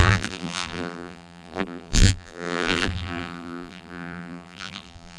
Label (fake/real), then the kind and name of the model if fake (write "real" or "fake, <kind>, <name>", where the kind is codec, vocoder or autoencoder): fake, vocoder, BigVGAN v2